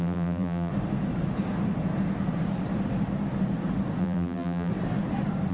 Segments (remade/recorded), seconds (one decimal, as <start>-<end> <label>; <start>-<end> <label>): 0.0-0.7 remade; 0.7-4.0 recorded; 4.0-4.7 remade; 4.7-5.5 recorded